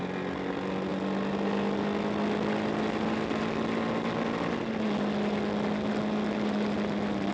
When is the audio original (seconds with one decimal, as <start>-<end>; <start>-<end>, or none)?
0.0-7.3